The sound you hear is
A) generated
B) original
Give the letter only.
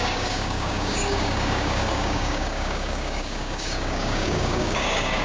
A